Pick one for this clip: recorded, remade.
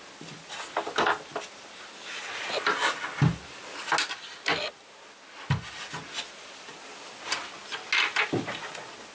recorded